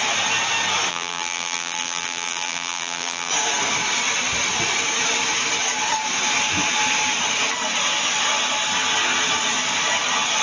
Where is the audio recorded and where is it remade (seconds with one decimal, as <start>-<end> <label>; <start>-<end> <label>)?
0.0-0.9 recorded; 0.9-3.3 remade; 3.3-10.4 recorded